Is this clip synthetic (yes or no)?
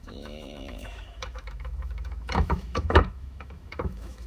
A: yes